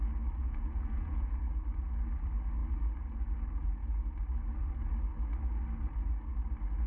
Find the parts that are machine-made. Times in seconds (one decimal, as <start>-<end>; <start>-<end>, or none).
0.4-1.4